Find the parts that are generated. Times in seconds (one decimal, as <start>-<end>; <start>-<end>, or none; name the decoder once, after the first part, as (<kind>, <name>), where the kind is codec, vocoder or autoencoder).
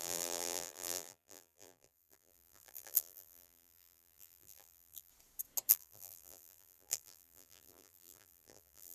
0.0-5.1 (vocoder, BigVGAN v2); 5.7-8.9